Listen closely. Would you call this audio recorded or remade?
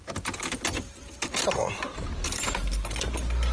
recorded